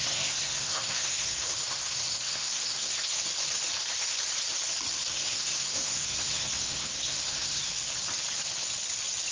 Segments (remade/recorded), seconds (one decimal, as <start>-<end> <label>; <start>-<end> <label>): 0.0-3.3 remade; 3.3-5.1 recorded; 5.1-7.7 remade; 7.7-9.3 recorded